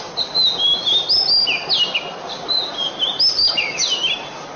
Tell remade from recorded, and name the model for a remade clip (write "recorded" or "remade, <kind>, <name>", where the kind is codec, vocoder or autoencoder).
recorded